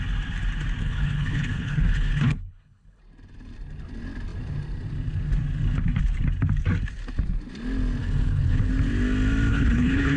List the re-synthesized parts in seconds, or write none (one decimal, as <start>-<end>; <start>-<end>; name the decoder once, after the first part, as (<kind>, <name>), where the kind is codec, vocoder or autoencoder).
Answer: 0.8-3.0 (codec, HILCodec); 8.0-8.7; 9.5-10.2

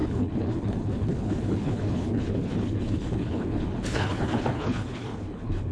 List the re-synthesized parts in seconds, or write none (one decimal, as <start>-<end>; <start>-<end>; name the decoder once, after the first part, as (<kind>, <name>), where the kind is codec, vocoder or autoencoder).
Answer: 0.0-5.7 (codec, HILCodec)

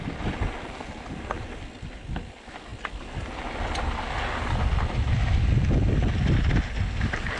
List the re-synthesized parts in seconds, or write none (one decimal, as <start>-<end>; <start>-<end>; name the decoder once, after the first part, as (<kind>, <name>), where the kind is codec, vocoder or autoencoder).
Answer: none

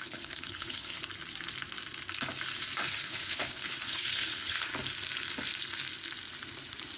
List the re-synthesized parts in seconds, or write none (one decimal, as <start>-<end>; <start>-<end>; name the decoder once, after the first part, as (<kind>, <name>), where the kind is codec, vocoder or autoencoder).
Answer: 0.0-1.0 (codec, HILCodec); 2.8-4.7

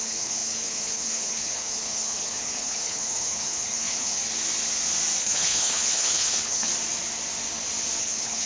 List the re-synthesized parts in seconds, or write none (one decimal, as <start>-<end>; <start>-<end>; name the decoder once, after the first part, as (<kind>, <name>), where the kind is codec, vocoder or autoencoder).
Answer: 0.0-4.2 (codec, HILCodec); 5.2-6.7; 8.0-8.5

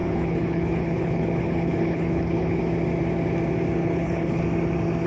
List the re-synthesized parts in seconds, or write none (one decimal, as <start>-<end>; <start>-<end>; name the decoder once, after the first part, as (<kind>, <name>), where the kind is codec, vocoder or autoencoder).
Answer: 0.0-2.6 (codec, HILCodec); 3.8-4.4